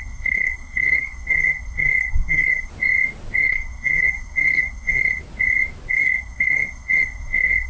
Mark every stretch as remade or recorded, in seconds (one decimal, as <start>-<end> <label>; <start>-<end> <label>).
0.0-2.7 remade; 2.7-3.4 recorded; 3.4-5.2 remade; 5.2-5.9 recorded; 5.9-7.7 remade